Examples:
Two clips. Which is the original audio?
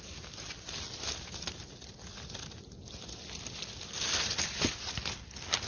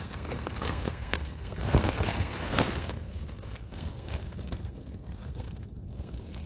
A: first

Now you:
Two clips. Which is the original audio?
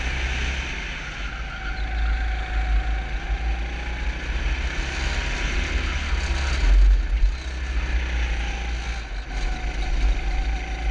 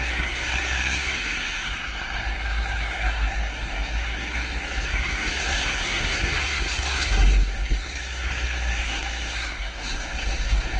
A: first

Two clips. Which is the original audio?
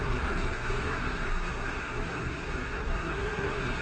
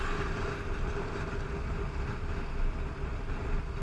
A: second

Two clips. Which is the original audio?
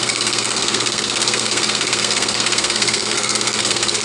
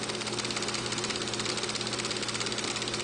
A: second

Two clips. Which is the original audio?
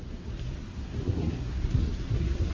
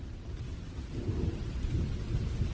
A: second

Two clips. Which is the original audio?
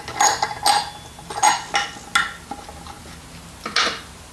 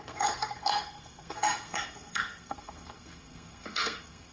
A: first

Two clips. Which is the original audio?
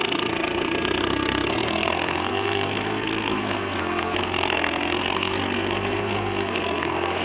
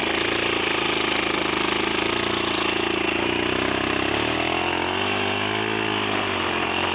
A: second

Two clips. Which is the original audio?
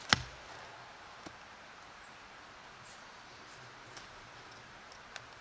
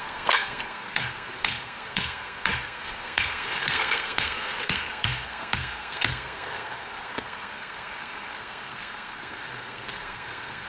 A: first